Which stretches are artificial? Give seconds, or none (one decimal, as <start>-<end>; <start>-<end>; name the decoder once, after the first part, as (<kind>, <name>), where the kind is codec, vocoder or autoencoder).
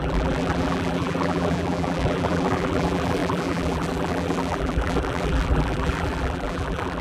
0.0-7.0 (vocoder, BigVGAN v2)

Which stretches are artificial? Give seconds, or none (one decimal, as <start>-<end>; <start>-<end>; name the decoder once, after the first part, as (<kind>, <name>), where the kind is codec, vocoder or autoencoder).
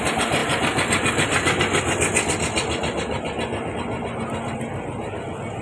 none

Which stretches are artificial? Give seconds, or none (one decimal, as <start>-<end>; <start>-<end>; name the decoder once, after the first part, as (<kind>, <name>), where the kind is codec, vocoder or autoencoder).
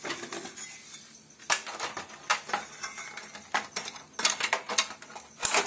none